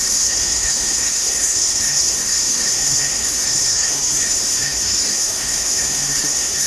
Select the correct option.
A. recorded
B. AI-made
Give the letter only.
B